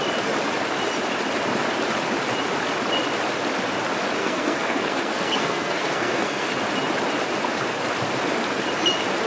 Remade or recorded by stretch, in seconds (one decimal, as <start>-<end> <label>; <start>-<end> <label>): 0.0-4.2 recorded; 4.2-6.5 remade; 6.5-9.3 recorded